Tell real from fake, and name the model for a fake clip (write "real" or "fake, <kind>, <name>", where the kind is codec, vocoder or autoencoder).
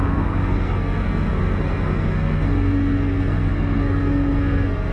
fake, codec, SNAC